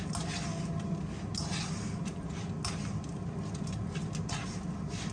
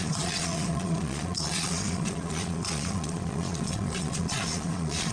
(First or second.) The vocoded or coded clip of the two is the second